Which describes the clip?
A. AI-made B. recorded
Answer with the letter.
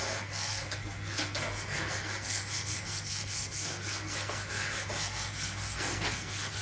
A